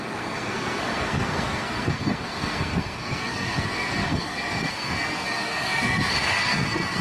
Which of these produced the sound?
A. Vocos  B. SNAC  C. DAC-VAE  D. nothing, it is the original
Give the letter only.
B